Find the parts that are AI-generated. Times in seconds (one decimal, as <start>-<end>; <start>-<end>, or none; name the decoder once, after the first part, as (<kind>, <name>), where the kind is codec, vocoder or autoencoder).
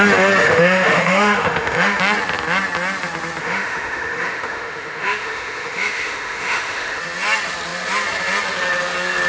0.4-2.0 (autoencoder, DAC-VAE); 3.4-7.0